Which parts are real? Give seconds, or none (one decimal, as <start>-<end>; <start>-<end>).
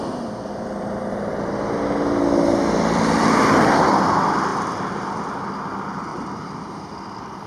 0.0-4.5; 5.2-6.1; 6.7-7.5